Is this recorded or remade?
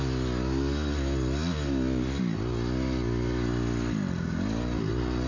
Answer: recorded